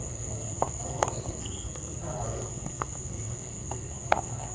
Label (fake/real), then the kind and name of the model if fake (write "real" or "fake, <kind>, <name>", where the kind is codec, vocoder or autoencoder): fake, codec, SNAC